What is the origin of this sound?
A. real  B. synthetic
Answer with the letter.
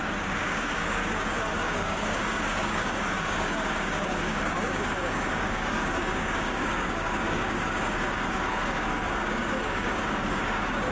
B